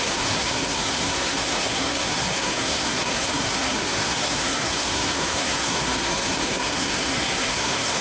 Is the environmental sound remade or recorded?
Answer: remade